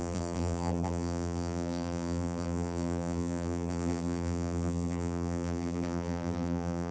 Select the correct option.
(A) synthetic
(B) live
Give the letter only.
A